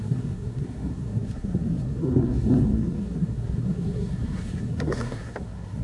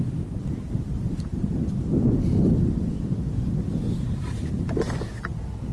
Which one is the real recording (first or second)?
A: second